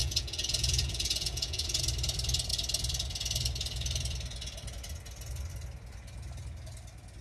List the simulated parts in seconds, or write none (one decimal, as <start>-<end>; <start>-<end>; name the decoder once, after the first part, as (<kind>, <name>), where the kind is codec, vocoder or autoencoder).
0.0-1.8 (vocoder, Vocos)